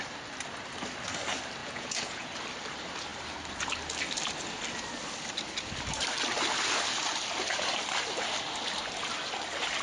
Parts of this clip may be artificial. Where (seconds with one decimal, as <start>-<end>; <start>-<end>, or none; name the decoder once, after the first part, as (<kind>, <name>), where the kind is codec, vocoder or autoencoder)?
1.6-2.3 (vocoder, Vocos)